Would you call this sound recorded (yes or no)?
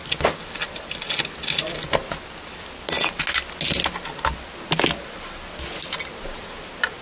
yes